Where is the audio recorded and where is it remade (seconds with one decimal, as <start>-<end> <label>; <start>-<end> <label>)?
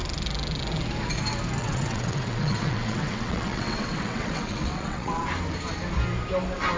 0.0-1.6 recorded; 1.6-5.2 remade; 5.2-6.8 recorded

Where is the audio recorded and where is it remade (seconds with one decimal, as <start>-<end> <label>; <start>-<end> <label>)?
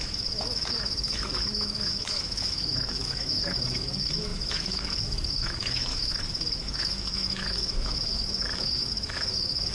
0.0-9.7 remade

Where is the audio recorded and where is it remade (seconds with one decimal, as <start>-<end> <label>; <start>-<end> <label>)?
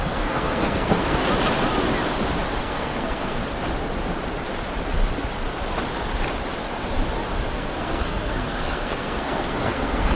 0.0-1.2 remade; 1.2-2.6 recorded; 2.6-3.4 remade; 3.4-7.5 recorded; 7.5-10.1 remade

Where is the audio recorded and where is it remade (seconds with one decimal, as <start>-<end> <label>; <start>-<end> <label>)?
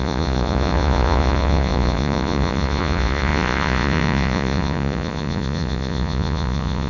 0.0-6.9 remade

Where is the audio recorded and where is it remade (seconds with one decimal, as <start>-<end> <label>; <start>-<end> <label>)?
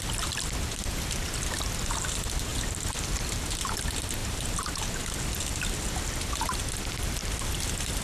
0.0-8.0 recorded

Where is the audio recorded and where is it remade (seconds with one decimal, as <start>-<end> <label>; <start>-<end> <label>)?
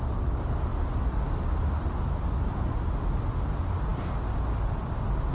0.0-5.3 recorded